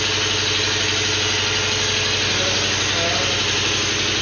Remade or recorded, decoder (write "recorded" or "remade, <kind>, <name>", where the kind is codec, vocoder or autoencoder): recorded